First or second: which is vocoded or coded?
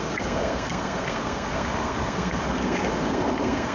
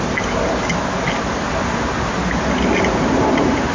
first